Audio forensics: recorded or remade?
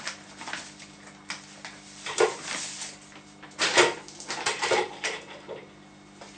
recorded